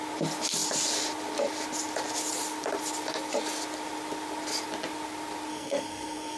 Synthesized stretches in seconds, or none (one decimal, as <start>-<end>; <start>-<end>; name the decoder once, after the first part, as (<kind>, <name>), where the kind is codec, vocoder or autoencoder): 5.5-6.4 (codec, SNAC)